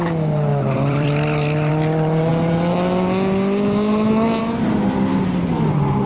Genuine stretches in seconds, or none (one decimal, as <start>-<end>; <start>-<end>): 0.0-0.5; 1.7-6.1